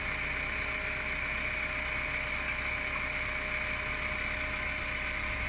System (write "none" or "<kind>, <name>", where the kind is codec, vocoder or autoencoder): none